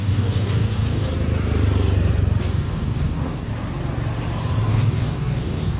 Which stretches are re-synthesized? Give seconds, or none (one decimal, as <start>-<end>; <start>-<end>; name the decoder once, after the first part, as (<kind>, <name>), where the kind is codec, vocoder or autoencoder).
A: 0.0-1.1 (codec, DAC); 2.4-3.5; 4.7-5.8